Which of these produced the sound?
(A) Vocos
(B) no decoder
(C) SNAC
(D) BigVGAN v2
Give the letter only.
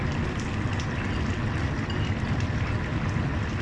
B